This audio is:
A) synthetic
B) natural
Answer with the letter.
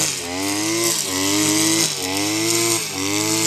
B